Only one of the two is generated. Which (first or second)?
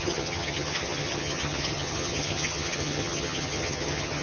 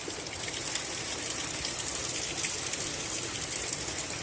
first